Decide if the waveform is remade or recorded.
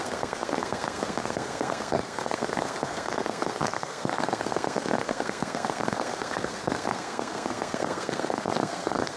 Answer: remade